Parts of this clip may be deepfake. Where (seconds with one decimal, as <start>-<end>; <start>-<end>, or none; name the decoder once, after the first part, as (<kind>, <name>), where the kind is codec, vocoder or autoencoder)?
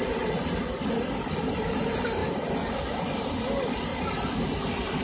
none